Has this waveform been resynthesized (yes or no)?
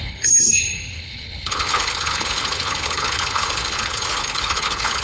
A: yes